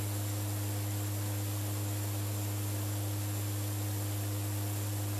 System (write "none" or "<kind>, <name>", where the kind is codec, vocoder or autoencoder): none